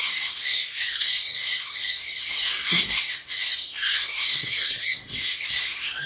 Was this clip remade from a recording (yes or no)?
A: yes